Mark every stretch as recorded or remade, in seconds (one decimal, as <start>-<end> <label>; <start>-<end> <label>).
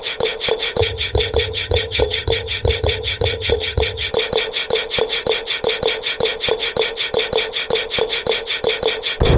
0.0-0.8 recorded; 0.8-4.1 remade; 4.1-9.4 recorded